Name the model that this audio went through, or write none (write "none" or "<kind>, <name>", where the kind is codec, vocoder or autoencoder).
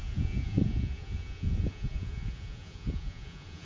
vocoder, Vocos